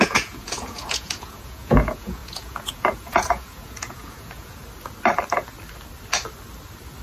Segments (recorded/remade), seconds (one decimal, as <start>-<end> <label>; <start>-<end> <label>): 0.0-4.6 remade; 4.6-7.0 recorded